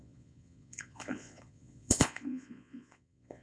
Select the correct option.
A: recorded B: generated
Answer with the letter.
B